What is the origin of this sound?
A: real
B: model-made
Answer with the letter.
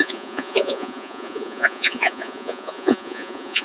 B